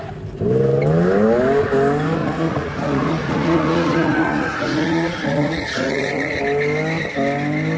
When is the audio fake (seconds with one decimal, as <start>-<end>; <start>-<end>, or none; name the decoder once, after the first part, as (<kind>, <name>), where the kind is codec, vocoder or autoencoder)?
2.2-6.4 (vocoder, Vocos)